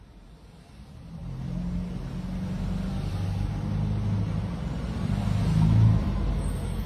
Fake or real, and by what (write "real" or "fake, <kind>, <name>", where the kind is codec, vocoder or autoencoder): real